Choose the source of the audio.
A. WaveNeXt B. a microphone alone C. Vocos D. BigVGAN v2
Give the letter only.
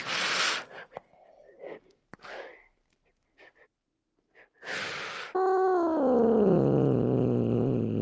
B